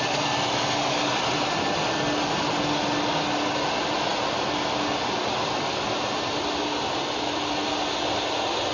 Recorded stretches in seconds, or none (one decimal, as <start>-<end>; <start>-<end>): 0.0-8.7